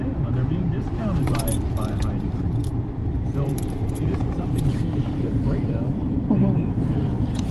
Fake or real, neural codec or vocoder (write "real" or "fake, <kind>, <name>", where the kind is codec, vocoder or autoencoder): fake, vocoder, BigVGAN v2